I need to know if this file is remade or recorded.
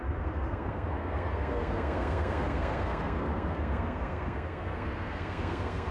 remade